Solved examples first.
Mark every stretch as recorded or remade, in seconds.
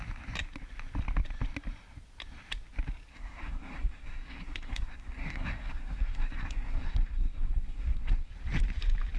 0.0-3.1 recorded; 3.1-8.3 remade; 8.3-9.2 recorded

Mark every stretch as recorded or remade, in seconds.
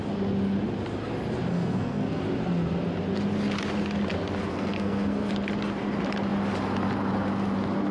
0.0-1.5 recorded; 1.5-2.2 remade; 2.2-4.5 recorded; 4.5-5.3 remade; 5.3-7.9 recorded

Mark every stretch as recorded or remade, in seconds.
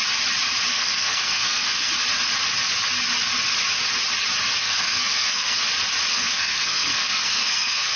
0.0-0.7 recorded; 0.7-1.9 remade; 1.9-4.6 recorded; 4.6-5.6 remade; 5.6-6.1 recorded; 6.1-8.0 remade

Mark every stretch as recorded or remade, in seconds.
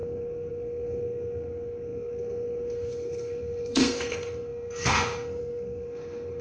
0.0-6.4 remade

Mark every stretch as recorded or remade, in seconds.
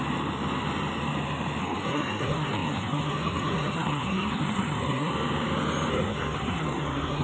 0.0-1.6 recorded; 1.6-5.1 remade; 5.1-5.9 recorded; 5.9-7.2 remade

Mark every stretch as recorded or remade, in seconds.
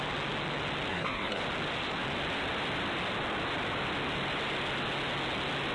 0.0-0.9 recorded; 0.9-1.4 remade; 1.4-5.7 recorded